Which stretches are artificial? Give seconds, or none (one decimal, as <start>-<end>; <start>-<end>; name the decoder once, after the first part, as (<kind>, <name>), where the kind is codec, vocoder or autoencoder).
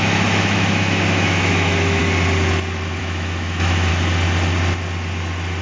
0.0-2.0 (autoencoder, DAC-VAE); 3.0-3.9